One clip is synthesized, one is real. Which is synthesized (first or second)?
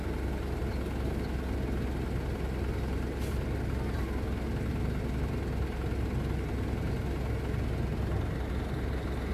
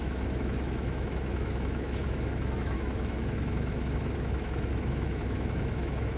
second